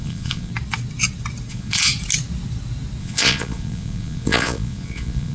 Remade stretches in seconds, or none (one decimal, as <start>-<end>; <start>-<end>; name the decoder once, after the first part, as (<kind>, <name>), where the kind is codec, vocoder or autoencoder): 0.0-0.5 (vocoder, Vocos); 1.5-1.9; 3.0-5.3